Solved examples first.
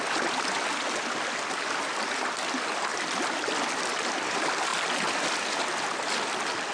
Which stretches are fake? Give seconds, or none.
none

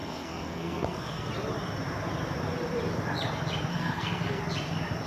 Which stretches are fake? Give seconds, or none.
0.0-1.3 (codec, SNAC); 3.7-4.4

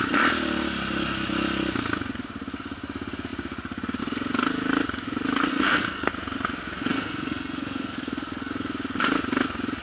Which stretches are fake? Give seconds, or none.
5.5-6.1 (codec, SNAC); 6.9-8.5

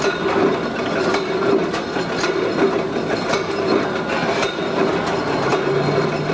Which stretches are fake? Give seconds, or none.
none

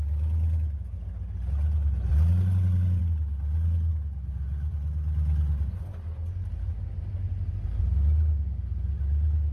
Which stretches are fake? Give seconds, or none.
none